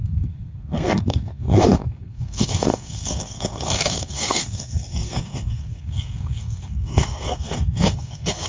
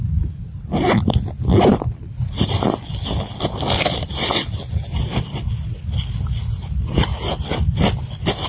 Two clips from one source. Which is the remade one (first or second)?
first